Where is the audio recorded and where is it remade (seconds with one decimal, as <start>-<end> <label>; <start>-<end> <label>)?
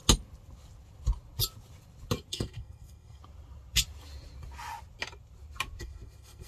0.0-2.3 recorded; 2.3-3.2 remade; 3.2-5.8 recorded; 5.8-6.5 remade